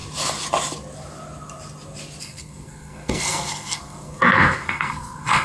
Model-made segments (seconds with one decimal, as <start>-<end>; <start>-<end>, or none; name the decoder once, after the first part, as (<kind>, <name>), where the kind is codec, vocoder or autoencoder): 2.2-5.4 (codec, SNAC)